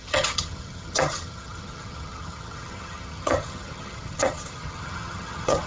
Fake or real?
fake